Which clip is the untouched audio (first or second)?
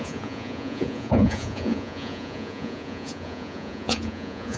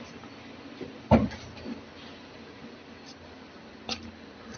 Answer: second